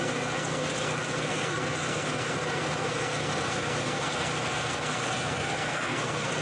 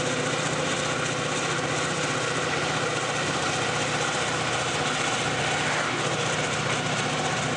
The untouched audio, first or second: second